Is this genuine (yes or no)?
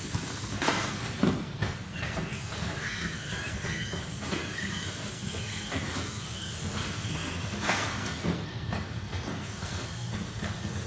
no